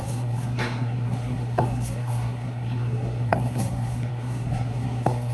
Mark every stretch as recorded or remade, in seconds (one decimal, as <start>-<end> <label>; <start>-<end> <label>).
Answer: 0.0-5.3 remade